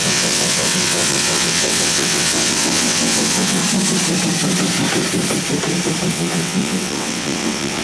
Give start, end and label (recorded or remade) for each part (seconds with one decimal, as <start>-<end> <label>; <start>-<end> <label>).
0.0-3.6 remade; 3.6-6.1 recorded; 6.1-7.8 remade